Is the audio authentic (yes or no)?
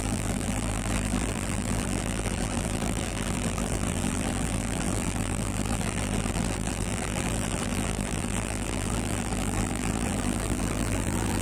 no